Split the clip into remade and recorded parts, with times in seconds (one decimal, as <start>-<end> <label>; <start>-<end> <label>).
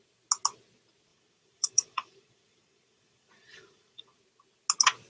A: 0.0-1.1 recorded; 1.1-4.2 remade; 4.2-5.1 recorded